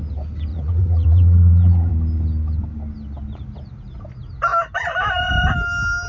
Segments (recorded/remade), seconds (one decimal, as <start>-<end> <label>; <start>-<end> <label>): 0.0-0.5 recorded; 0.5-1.9 remade; 1.9-6.1 recorded

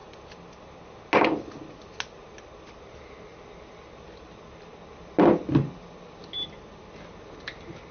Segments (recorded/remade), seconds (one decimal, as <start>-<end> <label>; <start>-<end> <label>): 0.0-7.9 recorded

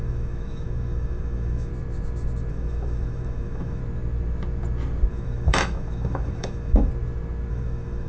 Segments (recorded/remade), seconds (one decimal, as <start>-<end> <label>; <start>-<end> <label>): 0.0-1.7 remade; 1.7-2.5 recorded; 2.5-3.8 remade; 3.8-5.1 recorded; 5.1-6.9 remade; 6.9-7.5 recorded; 7.5-8.1 remade